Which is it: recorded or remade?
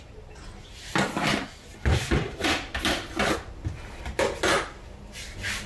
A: recorded